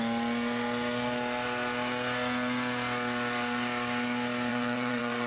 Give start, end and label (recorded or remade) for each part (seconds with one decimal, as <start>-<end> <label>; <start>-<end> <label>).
0.0-4.5 recorded; 4.5-5.3 remade